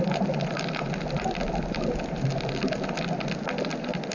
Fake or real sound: real